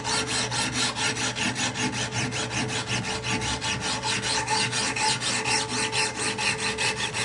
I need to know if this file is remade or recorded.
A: recorded